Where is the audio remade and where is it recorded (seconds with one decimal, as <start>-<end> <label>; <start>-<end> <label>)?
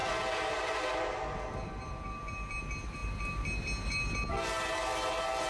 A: 0.0-5.5 recorded